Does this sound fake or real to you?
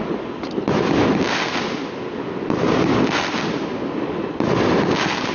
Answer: real